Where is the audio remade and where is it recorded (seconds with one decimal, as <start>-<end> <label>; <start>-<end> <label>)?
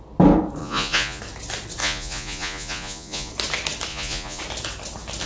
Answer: 0.0-0.6 recorded; 0.6-1.2 remade; 1.2-1.8 recorded; 1.8-3.3 remade; 3.3-3.9 recorded; 3.9-4.4 remade; 4.4-5.3 recorded